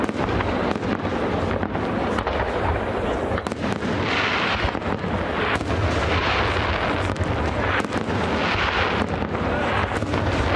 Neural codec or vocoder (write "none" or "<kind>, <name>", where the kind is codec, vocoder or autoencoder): none